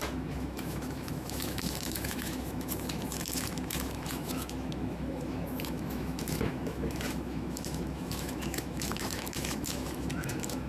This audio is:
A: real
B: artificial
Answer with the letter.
B